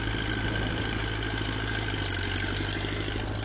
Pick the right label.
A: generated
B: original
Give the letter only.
B